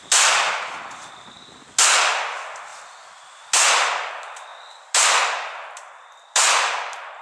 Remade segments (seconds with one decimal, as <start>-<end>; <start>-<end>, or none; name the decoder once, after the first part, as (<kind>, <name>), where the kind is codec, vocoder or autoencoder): none